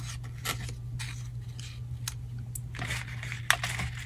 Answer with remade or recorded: recorded